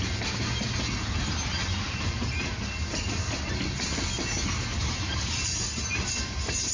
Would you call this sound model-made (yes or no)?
no